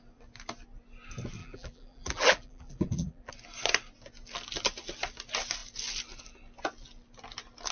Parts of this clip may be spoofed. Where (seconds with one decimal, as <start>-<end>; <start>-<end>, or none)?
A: 1.4-3.3